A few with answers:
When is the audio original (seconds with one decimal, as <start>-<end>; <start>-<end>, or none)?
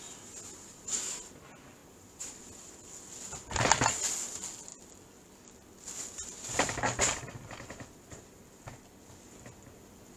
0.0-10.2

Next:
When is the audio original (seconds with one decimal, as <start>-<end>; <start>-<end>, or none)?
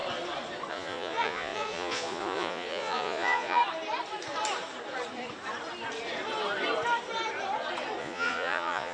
0.0-0.7; 3.6-8.0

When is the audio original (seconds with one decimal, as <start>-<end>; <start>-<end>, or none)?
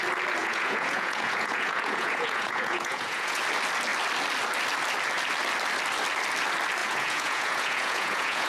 0.0-0.4; 3.4-6.8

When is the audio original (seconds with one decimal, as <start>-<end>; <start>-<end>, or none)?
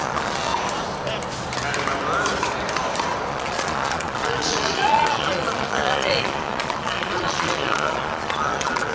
0.5-3.3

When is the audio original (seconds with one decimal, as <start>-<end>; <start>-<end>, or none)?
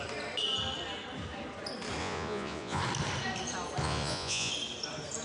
0.0-2.0; 2.8-3.8; 4.5-5.2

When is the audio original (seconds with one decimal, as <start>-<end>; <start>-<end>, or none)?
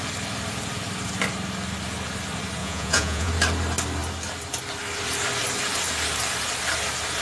0.0-2.6; 3.3-7.2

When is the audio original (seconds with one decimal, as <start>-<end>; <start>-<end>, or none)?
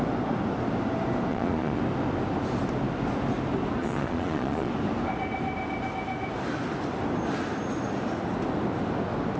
0.0-1.3; 1.8-3.8; 4.7-9.4